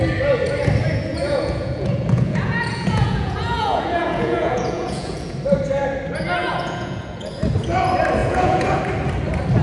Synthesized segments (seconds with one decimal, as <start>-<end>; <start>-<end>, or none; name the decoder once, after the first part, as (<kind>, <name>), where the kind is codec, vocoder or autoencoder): 1.1-5.3 (vocoder, Vocos); 6.4-7.3; 8.2-8.8